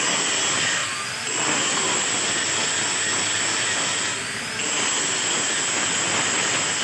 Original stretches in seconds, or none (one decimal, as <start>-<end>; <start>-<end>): 0.0-6.8